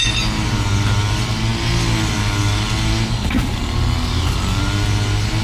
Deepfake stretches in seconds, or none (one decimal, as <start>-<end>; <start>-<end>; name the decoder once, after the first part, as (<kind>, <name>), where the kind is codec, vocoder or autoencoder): none